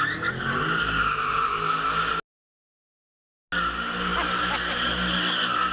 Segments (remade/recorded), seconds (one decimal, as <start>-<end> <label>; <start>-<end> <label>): 0.0-5.7 recorded